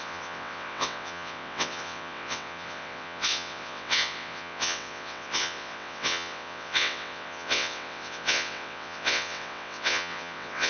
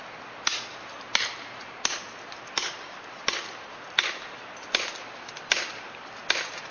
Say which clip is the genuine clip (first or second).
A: second